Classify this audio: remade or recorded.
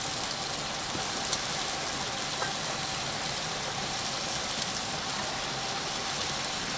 recorded